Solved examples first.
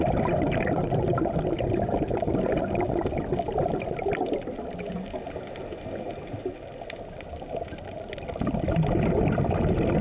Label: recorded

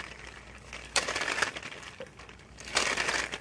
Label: recorded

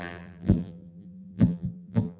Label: remade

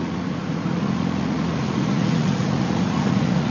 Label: remade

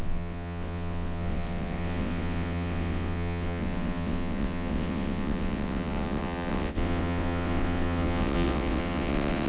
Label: remade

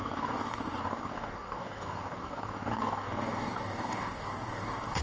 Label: remade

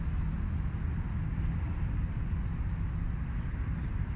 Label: recorded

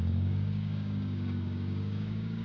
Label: remade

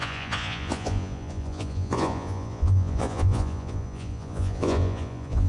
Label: remade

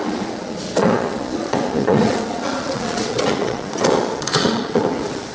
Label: remade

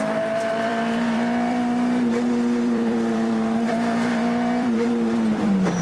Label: remade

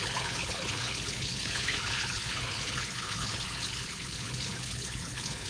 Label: remade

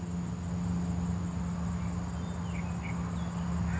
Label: recorded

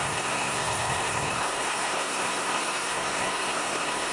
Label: remade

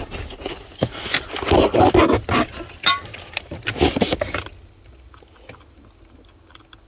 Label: recorded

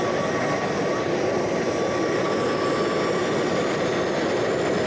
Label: recorded